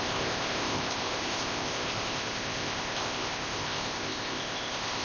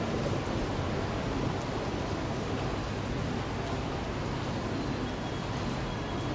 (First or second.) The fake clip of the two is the first